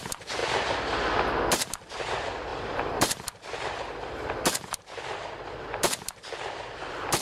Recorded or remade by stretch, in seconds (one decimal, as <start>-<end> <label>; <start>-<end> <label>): 0.0-0.4 remade; 0.4-1.7 recorded; 1.7-7.2 remade